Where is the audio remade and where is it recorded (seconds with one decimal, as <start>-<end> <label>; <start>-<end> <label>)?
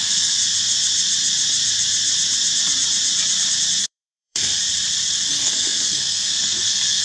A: 0.0-0.4 remade; 0.4-3.8 recorded; 3.8-4.6 remade; 4.6-5.3 recorded; 5.3-7.0 remade